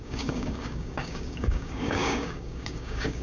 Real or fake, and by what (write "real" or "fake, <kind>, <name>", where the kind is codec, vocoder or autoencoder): fake, codec, DAC